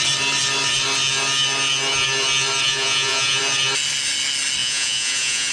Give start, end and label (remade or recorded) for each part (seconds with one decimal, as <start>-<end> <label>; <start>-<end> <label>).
0.0-2.7 recorded; 2.7-3.4 remade; 3.4-4.6 recorded; 4.6-5.5 remade